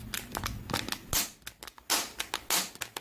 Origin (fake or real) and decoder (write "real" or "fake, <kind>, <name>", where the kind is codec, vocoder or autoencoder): real